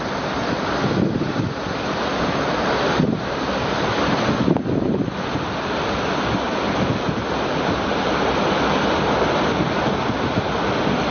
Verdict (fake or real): real